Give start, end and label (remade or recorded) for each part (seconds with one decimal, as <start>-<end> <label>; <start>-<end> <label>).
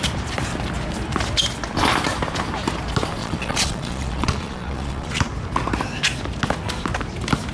0.0-3.2 recorded; 3.2-5.2 remade; 5.2-7.5 recorded